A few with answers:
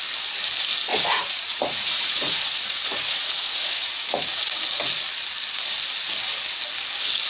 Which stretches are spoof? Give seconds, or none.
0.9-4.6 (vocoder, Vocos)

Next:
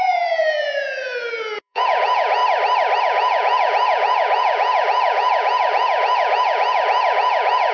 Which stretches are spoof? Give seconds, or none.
0.0-2.4 (vocoder, Vocos); 3.0-7.7

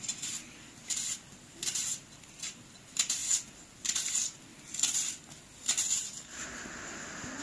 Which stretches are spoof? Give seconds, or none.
none

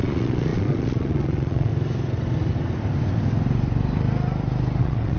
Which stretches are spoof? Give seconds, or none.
0.0-1.7 (vocoder, Vocos); 4.8-5.2

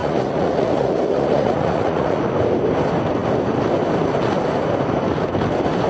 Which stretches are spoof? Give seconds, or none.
0.0-2.2 (vocoder, Vocos)